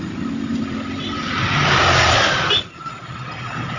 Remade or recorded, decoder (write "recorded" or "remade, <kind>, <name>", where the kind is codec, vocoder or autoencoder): recorded